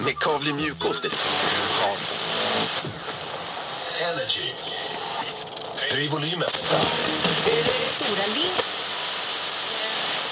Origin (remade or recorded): recorded